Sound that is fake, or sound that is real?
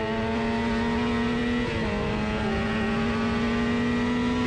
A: real